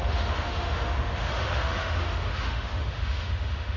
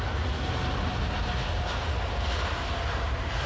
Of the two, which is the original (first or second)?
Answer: second